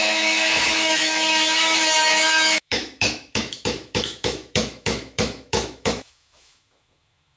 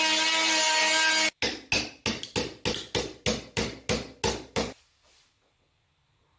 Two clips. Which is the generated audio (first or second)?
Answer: first